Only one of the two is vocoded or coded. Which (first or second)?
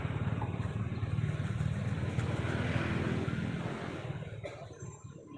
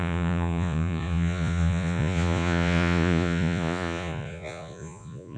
second